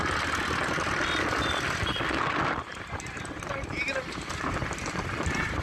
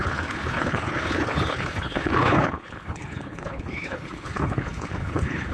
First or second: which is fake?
second